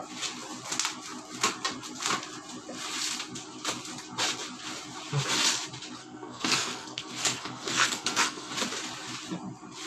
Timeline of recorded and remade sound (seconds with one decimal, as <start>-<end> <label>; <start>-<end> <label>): 0.0-6.0 recorded; 6.0-8.5 remade; 8.5-9.9 recorded